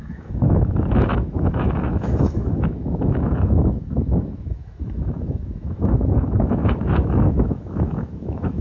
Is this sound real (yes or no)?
no